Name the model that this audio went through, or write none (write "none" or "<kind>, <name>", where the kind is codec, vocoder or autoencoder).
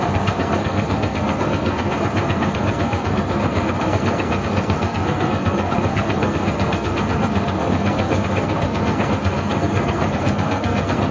codec, SNAC